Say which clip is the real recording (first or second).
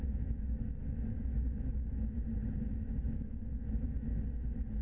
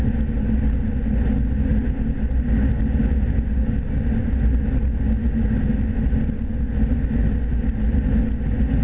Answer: second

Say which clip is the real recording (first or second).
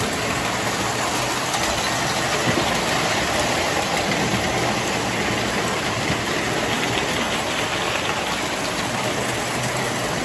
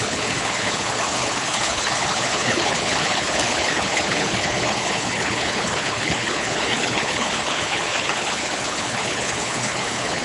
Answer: first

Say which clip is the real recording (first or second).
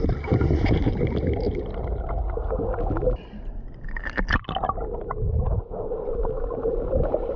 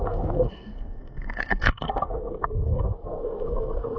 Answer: first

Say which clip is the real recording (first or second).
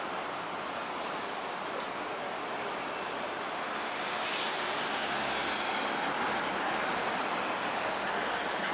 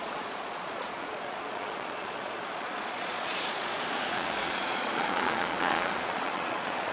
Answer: first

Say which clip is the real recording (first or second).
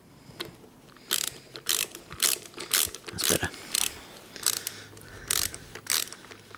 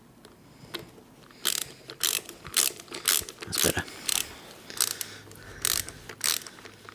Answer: second